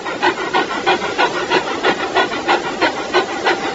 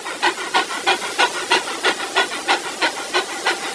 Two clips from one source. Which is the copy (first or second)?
first